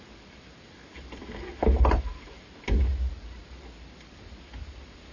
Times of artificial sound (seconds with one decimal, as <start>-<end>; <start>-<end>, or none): none